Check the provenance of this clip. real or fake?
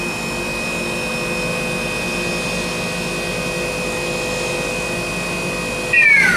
real